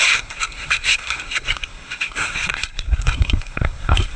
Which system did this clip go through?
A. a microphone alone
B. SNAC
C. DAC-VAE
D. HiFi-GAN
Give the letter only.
B